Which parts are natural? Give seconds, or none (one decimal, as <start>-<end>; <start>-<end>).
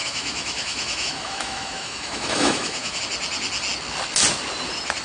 3.0-5.0